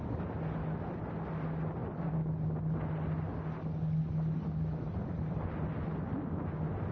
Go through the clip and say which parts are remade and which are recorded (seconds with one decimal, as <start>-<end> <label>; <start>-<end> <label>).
0.0-6.9 recorded